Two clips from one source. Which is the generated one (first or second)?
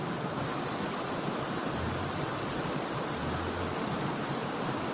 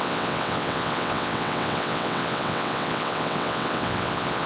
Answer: second